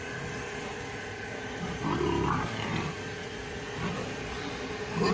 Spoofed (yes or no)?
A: no